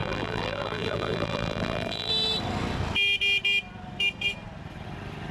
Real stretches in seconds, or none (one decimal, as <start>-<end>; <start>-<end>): 2.1-5.3

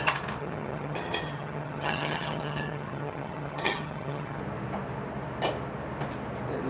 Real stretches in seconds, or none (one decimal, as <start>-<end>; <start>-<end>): 0.0-0.4; 4.4-6.7

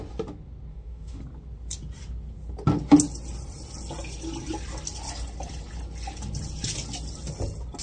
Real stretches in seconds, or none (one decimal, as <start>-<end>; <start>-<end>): 0.0-0.7; 1.2-7.8

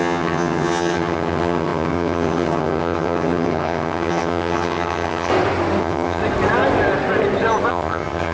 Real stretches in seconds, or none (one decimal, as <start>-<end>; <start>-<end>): 5.3-5.8; 6.2-7.7

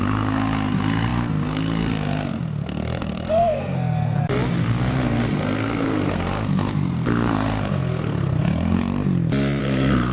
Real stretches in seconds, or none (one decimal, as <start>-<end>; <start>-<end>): 4.2-4.9; 8.8-9.6